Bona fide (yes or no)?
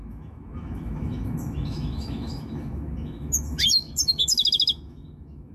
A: no